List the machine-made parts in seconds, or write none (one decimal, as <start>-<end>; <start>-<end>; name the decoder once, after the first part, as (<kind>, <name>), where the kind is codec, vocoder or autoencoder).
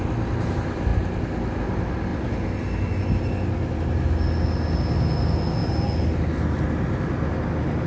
none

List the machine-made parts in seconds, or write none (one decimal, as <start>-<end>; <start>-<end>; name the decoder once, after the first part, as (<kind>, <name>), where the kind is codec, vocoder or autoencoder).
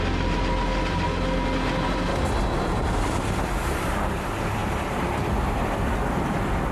none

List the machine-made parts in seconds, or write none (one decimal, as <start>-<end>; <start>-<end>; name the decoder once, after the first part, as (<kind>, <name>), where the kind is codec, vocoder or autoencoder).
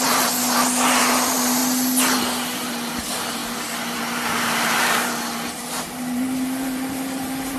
0.0-1.6 (vocoder, BigVGAN v2); 2.2-7.6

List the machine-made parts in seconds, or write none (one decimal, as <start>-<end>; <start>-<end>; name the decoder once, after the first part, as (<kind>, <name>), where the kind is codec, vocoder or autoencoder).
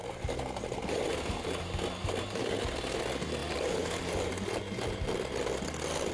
0.0-3.0 (vocoder, BigVGAN v2); 3.4-4.3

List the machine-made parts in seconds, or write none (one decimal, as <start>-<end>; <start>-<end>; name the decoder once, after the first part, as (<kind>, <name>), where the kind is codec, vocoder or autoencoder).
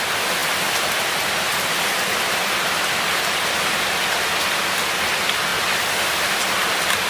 none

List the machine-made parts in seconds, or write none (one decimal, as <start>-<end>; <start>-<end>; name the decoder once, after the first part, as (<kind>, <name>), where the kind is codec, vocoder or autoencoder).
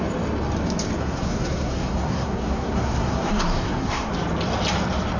1.0-4.1 (codec, SNAC)